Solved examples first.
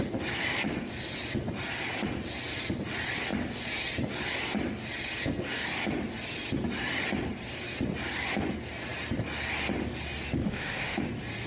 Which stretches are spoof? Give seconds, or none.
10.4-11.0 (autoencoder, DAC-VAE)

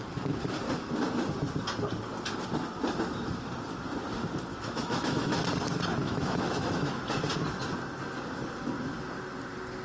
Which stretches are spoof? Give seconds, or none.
4.5-5.4 (autoencoder, DAC-VAE); 6.0-7.0